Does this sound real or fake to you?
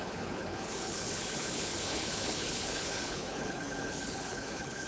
fake